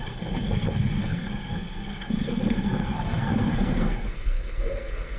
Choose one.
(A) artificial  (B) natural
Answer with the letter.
A